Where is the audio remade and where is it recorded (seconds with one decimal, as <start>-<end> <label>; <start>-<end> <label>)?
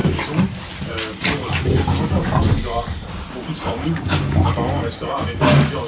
0.0-3.5 recorded; 3.5-4.5 remade; 4.5-5.9 recorded